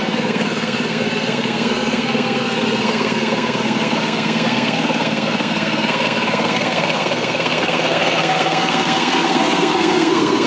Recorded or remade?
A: remade